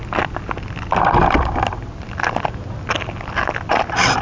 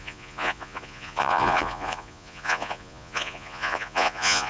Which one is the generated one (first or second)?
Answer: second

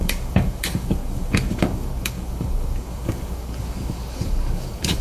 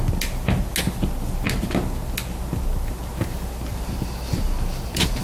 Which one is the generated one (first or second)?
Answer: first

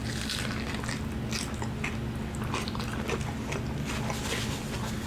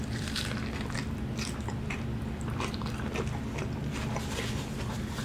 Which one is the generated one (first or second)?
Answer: second